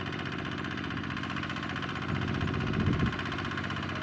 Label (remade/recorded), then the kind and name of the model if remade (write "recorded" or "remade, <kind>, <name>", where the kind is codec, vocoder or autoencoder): recorded